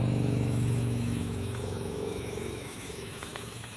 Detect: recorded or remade remade